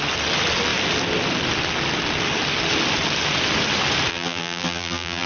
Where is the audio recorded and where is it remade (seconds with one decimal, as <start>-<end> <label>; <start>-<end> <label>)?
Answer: 0.0-4.1 recorded; 4.1-5.3 remade